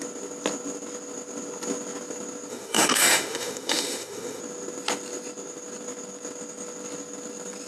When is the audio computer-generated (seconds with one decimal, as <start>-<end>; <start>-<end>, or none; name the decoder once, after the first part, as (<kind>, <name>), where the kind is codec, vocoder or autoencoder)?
2.5-4.4 (autoencoder, DAC-VAE)